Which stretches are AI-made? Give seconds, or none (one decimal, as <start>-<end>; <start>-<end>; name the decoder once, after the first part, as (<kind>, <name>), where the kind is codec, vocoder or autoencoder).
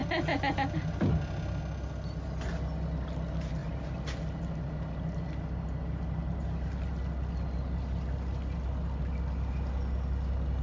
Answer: none